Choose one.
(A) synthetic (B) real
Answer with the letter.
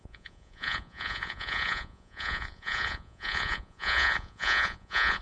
A